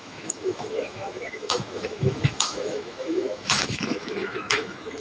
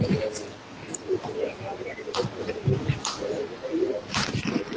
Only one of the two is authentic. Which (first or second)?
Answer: second